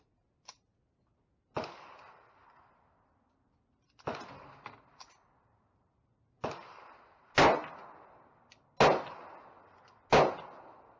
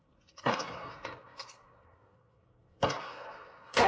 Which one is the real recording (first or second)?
first